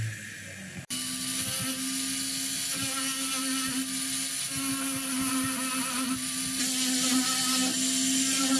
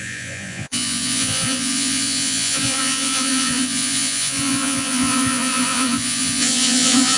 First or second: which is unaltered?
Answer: first